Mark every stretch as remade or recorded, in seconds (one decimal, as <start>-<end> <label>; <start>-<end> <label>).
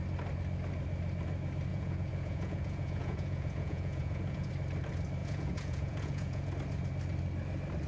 0.0-1.7 recorded; 1.7-4.5 remade; 4.5-5.2 recorded; 5.2-6.5 remade; 6.5-7.9 recorded